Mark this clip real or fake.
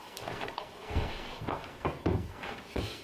fake